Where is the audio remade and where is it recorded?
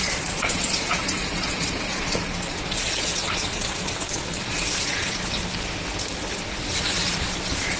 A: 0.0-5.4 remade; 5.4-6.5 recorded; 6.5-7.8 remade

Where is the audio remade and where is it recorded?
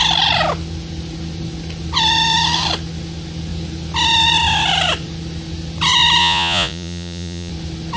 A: 0.0-6.2 recorded; 6.2-7.5 remade; 7.5-8.0 recorded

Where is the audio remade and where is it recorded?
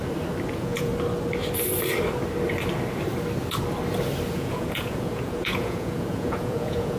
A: 0.0-0.5 recorded; 0.5-0.9 remade; 0.9-4.3 recorded; 4.3-7.0 remade